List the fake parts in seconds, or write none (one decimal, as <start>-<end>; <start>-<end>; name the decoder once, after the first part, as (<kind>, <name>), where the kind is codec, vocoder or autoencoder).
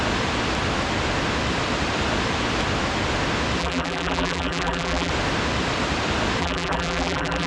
3.6-5.1 (vocoder, BigVGAN v2); 6.4-7.5